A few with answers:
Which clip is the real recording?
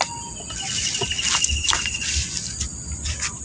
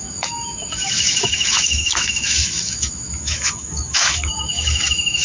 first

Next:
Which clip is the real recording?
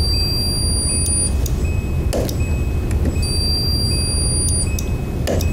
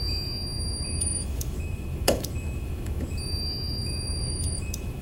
first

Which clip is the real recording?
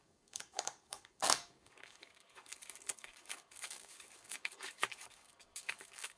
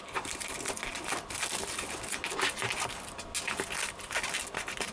second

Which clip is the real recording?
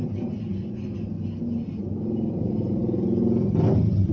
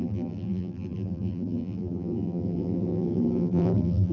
first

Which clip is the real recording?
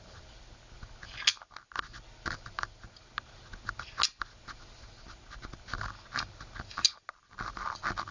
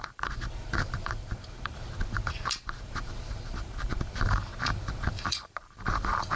first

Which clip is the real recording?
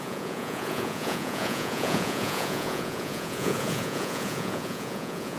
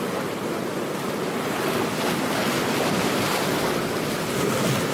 second